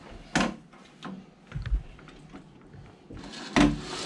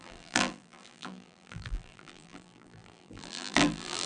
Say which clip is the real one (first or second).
first